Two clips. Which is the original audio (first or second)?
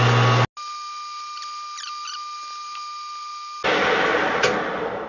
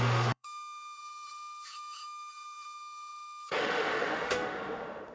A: first